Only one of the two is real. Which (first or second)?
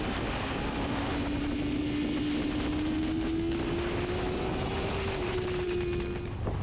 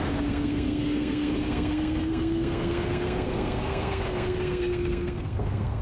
first